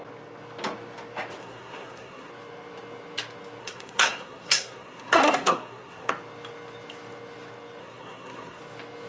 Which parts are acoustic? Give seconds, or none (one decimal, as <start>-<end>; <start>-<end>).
0.0-1.4; 2.3-3.6; 6.1-7.8; 8.6-9.1